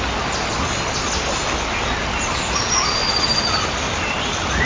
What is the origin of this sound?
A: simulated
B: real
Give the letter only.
B